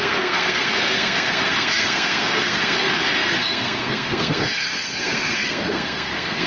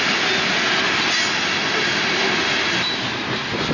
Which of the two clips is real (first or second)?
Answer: second